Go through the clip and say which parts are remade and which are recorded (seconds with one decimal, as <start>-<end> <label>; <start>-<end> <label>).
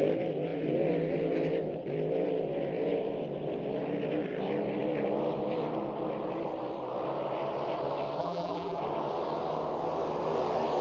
0.0-8.2 recorded; 8.2-8.8 remade; 8.8-10.8 recorded